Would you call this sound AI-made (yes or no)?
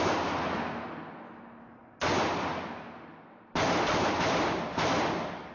no